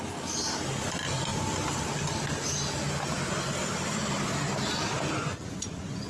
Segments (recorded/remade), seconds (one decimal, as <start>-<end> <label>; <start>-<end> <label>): 0.0-5.2 recorded; 5.2-6.1 remade